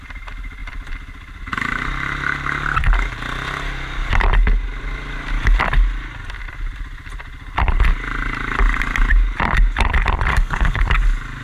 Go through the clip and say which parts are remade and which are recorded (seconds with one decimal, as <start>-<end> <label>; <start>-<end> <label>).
0.0-10.3 recorded; 10.3-10.8 remade; 10.8-11.4 recorded